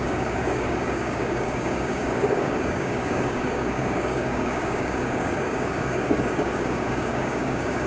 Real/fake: fake